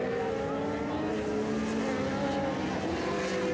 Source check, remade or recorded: recorded